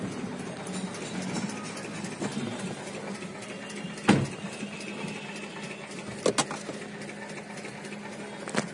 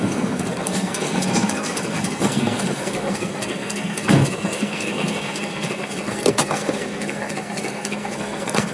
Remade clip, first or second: second